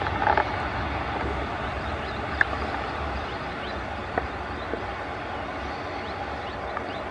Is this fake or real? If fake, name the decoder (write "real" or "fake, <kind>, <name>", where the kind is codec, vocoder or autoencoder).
real